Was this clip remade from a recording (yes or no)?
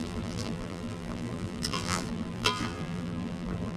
yes